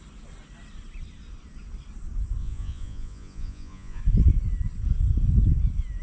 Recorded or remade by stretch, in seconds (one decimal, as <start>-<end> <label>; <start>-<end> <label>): 0.0-2.4 recorded; 2.4-4.0 remade; 4.0-6.0 recorded